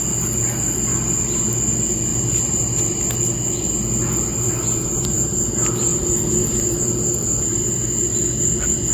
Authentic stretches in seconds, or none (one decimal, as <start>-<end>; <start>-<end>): 0.0-2.1; 3.1-4.3; 5.5-5.9; 6.8-8.9